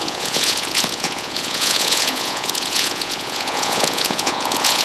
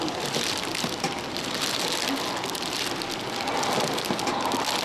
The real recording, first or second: second